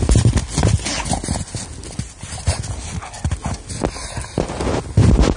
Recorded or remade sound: recorded